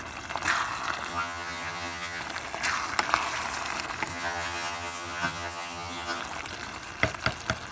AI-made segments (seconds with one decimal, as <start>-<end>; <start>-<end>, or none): 1.1-2.2; 4.1-6.2